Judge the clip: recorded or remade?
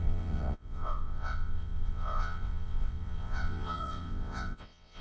remade